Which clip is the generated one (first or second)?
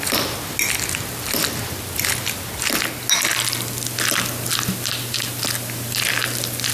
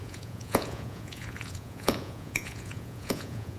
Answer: second